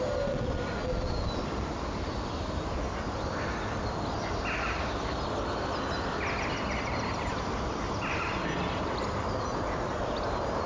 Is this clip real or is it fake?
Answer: real